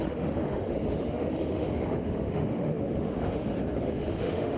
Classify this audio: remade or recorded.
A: remade